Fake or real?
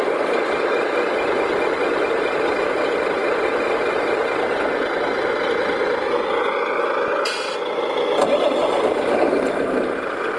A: real